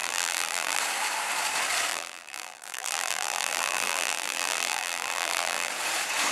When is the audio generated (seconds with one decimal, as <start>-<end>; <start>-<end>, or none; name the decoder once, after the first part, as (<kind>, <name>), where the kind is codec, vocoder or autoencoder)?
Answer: 0.0-0.8 (vocoder, BigVGAN v2); 1.9-5.7